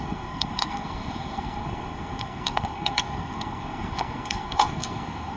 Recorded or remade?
remade